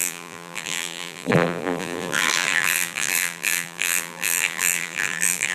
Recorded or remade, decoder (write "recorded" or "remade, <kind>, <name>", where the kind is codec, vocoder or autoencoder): remade, vocoder, BigVGAN v2